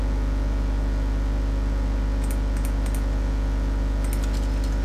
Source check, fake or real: real